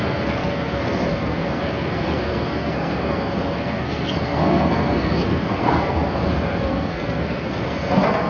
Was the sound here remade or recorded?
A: remade